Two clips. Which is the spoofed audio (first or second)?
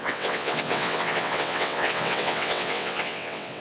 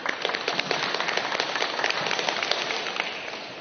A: first